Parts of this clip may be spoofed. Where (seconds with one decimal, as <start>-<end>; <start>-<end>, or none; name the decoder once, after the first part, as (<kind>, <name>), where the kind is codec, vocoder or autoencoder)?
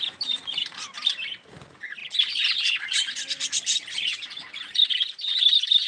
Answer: none